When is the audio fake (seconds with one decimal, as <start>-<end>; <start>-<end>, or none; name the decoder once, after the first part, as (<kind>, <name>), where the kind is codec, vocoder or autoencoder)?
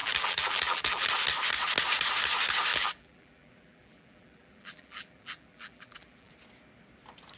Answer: 0.0-1.1 (vocoder, BigVGAN v2); 2.7-6.3